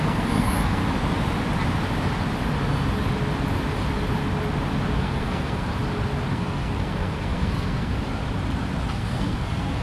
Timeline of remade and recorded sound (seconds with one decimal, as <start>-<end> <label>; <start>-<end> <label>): 0.0-0.8 remade; 0.8-5.0 recorded; 5.0-5.7 remade; 5.7-6.3 recorded; 6.3-8.2 remade; 8.2-8.9 recorded; 8.9-9.8 remade